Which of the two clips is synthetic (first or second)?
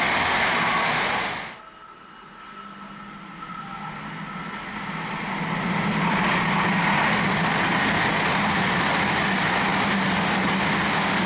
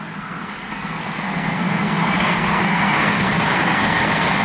second